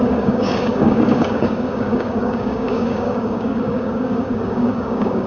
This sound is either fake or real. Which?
fake